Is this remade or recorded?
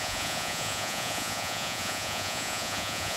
remade